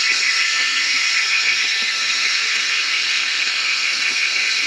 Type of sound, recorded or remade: remade